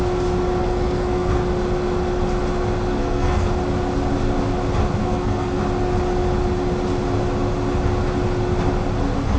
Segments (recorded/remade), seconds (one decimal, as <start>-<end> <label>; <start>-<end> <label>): 0.0-0.6 recorded; 0.6-1.3 remade; 1.3-2.9 recorded; 2.9-3.5 remade; 3.5-5.0 recorded; 5.0-5.6 remade; 5.6-9.4 recorded